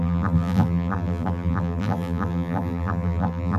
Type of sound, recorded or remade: remade